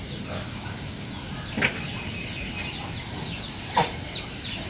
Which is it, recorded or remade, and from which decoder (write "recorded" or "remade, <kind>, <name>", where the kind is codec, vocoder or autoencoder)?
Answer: recorded